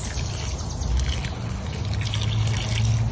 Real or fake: real